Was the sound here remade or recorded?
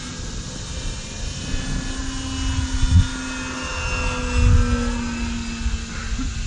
recorded